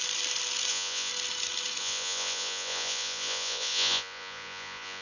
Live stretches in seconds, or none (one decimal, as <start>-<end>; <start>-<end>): 0.0-0.7; 1.1-1.8